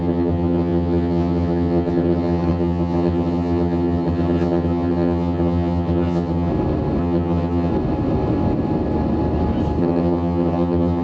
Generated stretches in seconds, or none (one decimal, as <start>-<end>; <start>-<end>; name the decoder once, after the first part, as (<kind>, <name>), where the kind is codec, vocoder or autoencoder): 0.0-6.5 (vocoder, HiFi-GAN); 7.0-7.7; 9.8-11.0